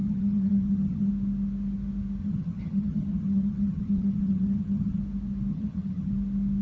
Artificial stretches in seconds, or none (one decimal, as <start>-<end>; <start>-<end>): 0.0-1.1; 2.2-5.0; 5.5-6.1